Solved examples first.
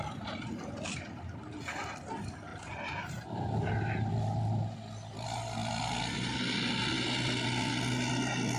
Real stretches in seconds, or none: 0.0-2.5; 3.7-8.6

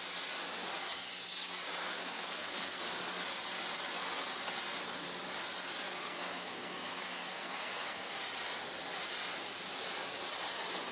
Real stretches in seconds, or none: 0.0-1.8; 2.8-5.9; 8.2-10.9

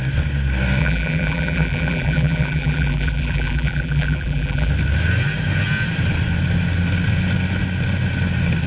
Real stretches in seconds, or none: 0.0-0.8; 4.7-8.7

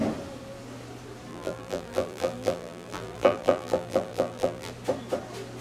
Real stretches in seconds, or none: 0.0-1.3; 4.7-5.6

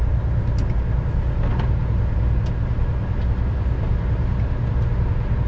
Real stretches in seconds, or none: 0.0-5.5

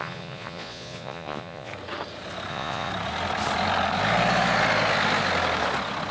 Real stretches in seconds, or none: 1.7-2.5; 2.9-6.1